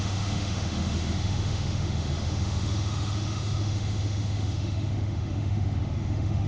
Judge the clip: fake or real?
fake